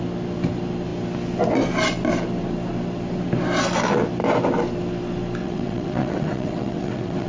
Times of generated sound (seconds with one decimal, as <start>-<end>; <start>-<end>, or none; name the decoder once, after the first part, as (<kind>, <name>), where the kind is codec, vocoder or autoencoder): 5.4-7.3 (vocoder, WaveNeXt)